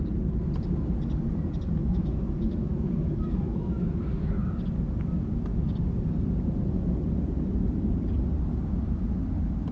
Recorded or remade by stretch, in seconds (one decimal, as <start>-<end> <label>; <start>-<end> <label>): 0.0-1.8 recorded; 1.8-4.3 remade; 4.3-9.7 recorded